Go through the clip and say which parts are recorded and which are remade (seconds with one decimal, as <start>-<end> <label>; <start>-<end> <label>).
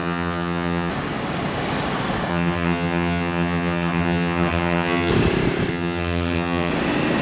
0.0-0.9 remade; 0.9-2.3 recorded; 2.3-5.1 remade; 5.1-5.7 recorded; 5.7-6.7 remade; 6.7-7.2 recorded